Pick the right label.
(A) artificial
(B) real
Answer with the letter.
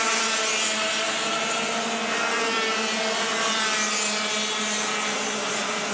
B